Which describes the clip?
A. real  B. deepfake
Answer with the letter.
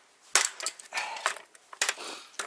A